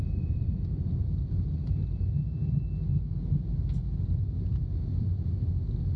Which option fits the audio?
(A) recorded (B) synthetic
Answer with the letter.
A